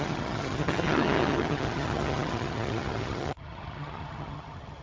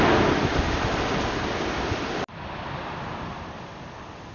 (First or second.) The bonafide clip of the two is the second